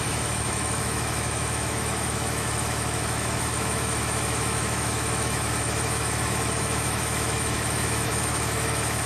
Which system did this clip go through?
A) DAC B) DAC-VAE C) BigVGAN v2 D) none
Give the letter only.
B